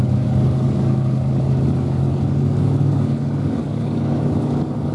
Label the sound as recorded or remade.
remade